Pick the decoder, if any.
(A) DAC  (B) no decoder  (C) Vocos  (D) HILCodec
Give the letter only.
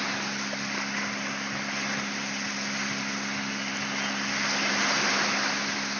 B